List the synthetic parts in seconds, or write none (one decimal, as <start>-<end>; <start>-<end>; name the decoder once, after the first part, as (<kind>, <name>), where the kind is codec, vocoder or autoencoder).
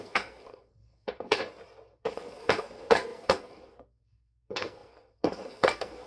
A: 0.0-1.4 (codec, SNAC); 2.0-6.1